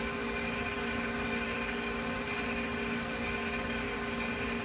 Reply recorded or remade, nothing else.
recorded